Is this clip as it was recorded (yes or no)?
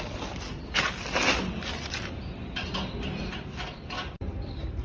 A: yes